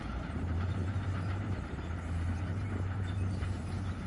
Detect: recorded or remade remade